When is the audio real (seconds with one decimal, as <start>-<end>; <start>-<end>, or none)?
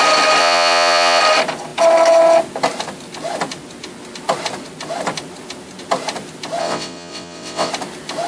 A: 0.0-0.4; 1.2-6.6; 7.7-8.3